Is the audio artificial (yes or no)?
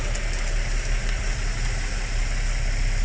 no